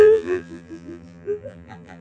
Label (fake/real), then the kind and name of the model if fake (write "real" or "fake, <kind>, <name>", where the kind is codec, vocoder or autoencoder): fake, vocoder, BigVGAN v2